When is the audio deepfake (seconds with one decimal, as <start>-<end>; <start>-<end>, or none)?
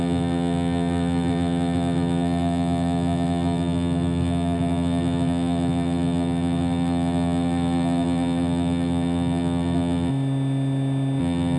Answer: 0.0-10.1; 11.2-11.6